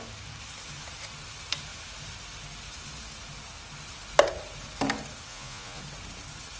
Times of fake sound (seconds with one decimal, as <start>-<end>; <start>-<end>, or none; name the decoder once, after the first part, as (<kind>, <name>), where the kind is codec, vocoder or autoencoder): 5.3-5.8 (vocoder, Vocos)